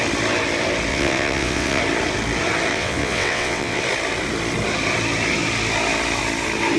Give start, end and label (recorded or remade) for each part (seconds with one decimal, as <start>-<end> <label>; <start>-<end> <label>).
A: 0.0-0.9 recorded; 0.9-1.8 remade; 1.8-2.7 recorded; 2.7-3.8 remade; 3.8-6.8 recorded